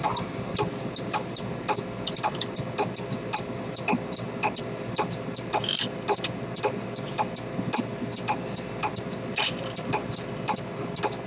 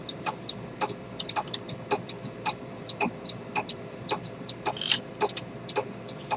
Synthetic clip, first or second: second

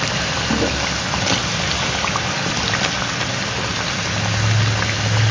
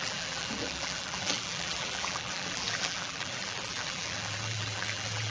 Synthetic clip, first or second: second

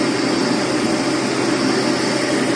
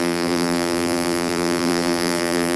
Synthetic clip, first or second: second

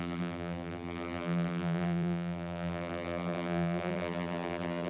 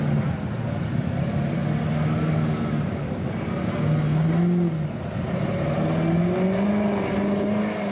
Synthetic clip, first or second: first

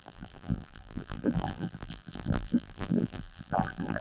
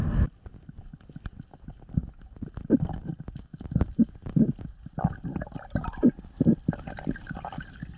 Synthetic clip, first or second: first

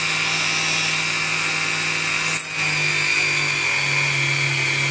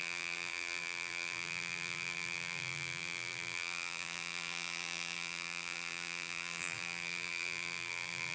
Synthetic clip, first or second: second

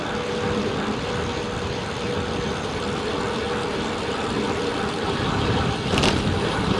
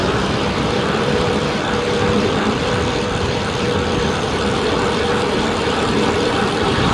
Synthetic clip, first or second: second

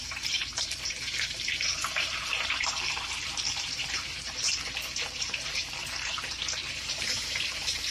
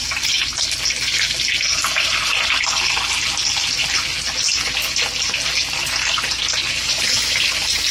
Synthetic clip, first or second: first